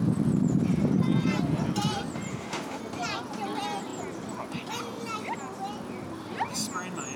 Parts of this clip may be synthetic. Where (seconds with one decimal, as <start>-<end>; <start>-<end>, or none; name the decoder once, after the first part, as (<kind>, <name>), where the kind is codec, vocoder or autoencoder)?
2.3-2.8 (autoencoder, DAC-VAE)